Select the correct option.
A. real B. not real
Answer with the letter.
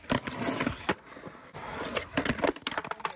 A